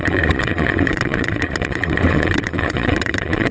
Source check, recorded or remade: remade